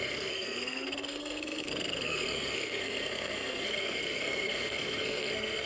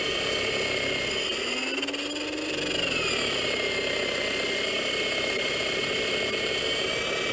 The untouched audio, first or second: second